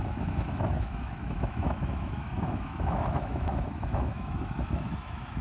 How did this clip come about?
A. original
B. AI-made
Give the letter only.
B